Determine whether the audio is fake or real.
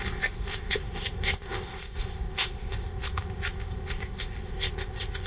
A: fake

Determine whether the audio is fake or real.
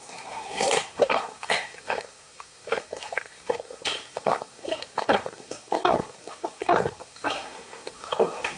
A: fake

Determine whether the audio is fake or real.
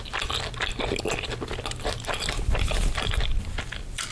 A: real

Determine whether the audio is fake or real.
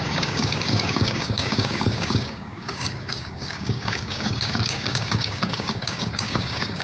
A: fake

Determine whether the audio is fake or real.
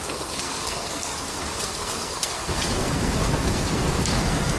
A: fake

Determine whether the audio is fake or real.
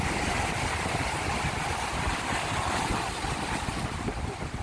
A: real